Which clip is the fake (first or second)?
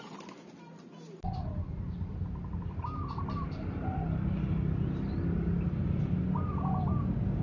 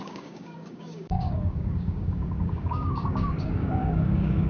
second